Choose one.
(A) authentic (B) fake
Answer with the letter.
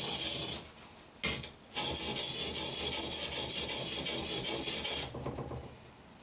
A